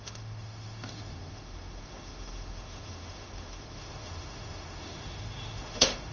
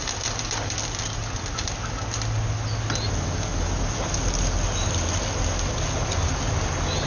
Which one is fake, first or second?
first